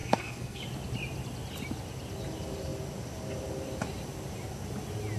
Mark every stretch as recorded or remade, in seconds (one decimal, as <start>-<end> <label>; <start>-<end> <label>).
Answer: 0.0-0.6 remade; 0.6-5.2 recorded